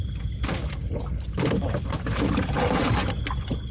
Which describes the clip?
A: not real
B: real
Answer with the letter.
B